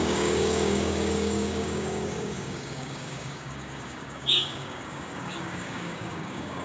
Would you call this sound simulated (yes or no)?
yes